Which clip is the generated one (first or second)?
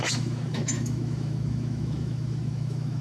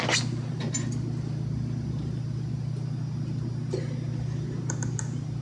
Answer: first